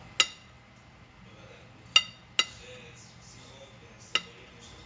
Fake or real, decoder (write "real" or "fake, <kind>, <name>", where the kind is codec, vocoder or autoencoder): real